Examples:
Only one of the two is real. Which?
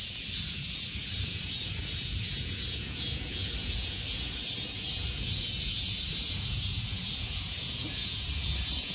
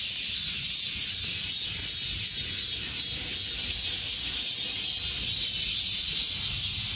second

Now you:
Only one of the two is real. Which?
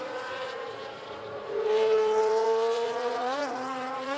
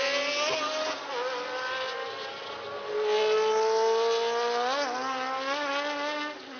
second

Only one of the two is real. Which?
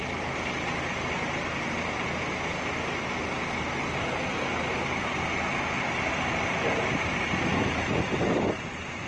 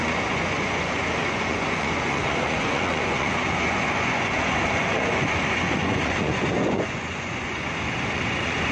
first